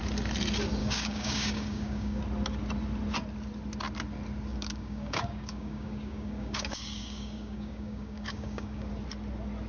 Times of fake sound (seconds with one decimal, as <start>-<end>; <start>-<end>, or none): 0.8-2.2; 4.5-8.9